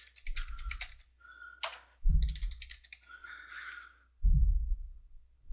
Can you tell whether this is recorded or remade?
recorded